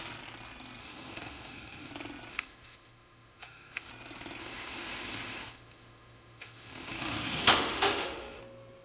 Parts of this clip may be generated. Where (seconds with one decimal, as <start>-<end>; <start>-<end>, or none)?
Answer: 0.8-1.9; 2.3-3.9; 4.4-8.4